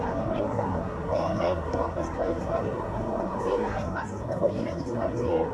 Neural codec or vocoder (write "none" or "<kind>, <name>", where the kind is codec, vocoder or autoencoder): codec, SNAC